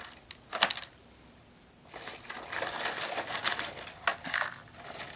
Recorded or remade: recorded